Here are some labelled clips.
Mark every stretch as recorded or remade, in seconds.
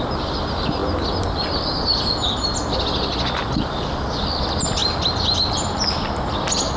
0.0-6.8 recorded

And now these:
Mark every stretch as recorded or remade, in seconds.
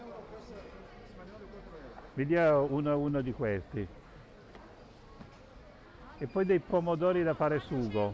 0.0-8.1 recorded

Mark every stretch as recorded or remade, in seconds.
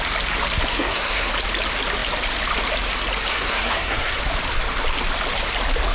0.0-0.7 recorded; 0.7-1.3 remade; 1.3-3.3 recorded; 3.3-4.2 remade; 4.2-5.9 recorded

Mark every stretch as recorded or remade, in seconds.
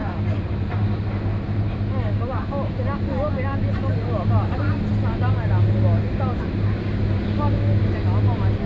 0.0-8.7 recorded